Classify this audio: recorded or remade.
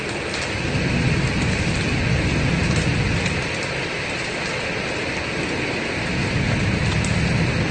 recorded